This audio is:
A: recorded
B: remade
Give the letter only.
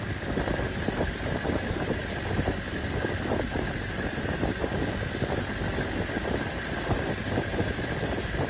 A